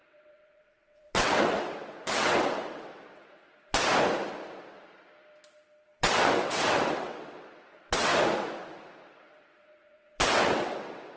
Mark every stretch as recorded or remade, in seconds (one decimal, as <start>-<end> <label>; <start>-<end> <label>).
0.0-3.9 remade; 3.9-6.0 recorded; 6.0-8.1 remade; 8.1-9.1 recorded; 9.1-11.2 remade